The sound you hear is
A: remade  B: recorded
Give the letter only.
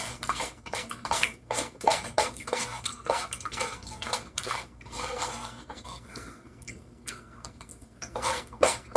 A